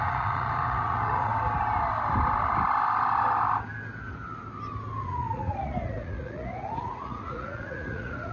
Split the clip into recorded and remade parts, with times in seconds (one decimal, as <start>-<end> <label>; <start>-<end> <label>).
0.0-1.3 remade; 1.3-5.0 recorded; 5.0-8.3 remade